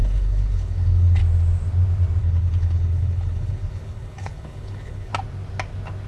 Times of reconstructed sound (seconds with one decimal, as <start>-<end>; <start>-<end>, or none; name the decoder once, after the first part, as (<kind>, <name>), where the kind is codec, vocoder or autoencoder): 0.0-1.2 (codec, HILCodec); 2.2-5.1